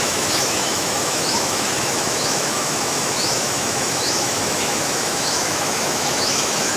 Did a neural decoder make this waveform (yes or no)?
yes